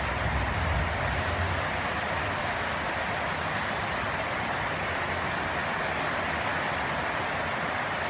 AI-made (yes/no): no